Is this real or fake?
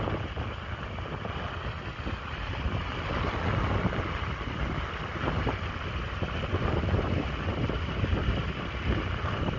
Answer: real